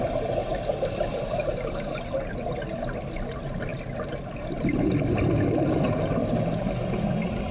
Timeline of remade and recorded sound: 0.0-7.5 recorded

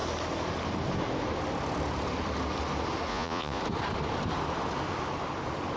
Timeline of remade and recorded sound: 0.0-3.1 recorded; 3.1-3.6 remade; 3.6-5.8 recorded

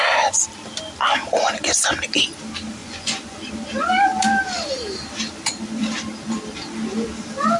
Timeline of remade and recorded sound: 0.0-2.8 recorded; 2.8-3.5 remade; 3.5-7.6 recorded

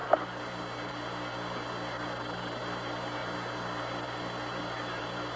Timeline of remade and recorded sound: 0.0-5.4 recorded

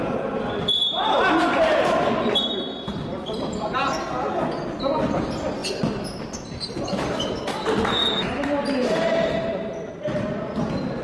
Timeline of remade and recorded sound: 0.0-11.0 recorded

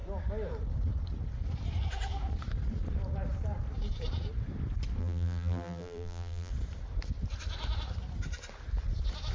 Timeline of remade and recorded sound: 0.0-5.0 recorded; 5.0-6.5 remade; 6.5-9.3 recorded